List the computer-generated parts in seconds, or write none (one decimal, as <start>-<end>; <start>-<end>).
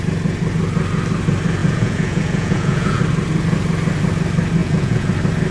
1.6-3.0; 4.6-5.1